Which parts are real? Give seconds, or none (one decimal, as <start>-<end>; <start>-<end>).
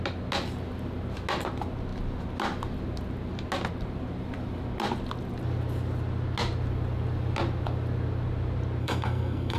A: 0.0-8.8